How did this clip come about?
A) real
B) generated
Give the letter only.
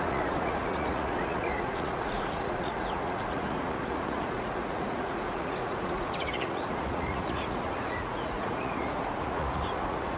B